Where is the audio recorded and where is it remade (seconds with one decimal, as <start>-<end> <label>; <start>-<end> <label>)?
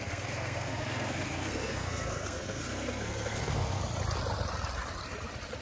0.0-3.8 remade; 3.8-5.6 recorded